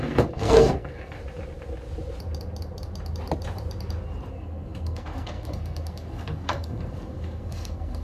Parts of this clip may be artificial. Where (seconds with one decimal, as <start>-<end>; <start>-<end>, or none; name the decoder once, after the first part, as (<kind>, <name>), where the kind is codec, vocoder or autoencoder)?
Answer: 0.0-1.2 (codec, SNAC); 4.3-8.0